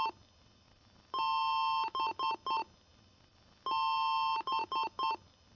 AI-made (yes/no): no